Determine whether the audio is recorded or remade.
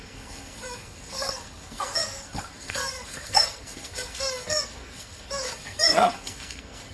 remade